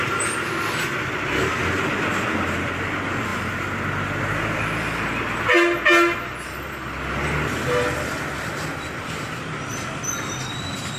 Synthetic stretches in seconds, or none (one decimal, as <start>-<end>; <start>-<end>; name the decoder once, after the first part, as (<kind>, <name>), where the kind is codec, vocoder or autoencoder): none